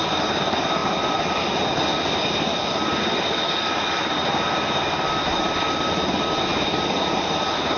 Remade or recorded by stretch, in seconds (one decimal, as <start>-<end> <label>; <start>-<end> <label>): 0.0-7.8 recorded